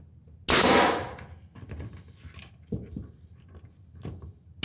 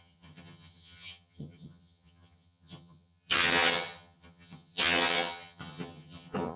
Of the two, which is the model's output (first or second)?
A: second